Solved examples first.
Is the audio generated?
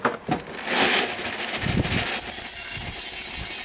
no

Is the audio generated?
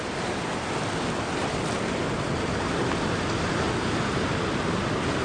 no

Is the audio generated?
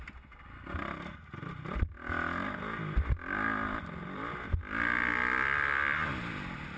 no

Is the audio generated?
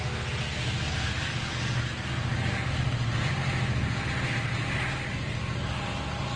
no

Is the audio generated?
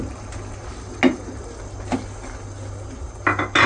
no